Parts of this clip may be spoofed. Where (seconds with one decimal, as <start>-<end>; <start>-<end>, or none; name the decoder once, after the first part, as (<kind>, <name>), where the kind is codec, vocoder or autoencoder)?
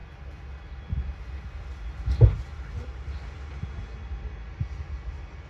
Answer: none